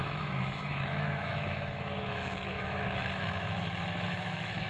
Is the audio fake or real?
fake